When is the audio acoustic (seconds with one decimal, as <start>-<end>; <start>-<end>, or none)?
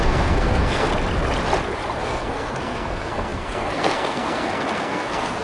0.9-2.0